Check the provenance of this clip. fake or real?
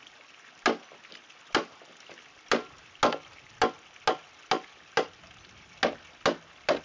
real